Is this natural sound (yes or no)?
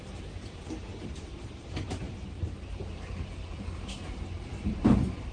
no